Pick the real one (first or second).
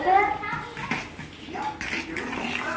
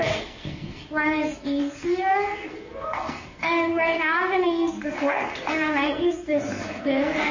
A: first